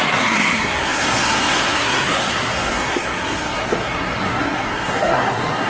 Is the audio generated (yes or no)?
yes